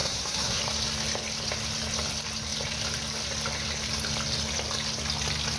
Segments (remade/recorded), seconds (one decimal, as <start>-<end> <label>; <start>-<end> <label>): 0.0-0.6 remade; 0.6-5.6 recorded